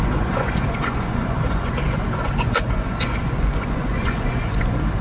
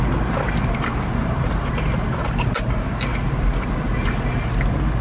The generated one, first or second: first